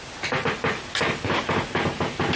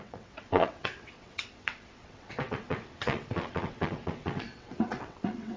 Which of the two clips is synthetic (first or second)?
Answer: second